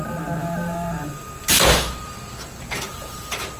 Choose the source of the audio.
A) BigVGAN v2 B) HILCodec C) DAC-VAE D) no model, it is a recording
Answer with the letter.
A